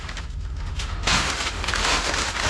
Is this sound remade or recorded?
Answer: remade